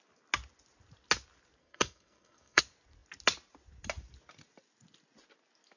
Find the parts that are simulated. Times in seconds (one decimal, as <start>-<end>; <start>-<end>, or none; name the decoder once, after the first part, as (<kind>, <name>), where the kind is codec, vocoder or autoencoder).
1.6-2.6 (codec, SNAC)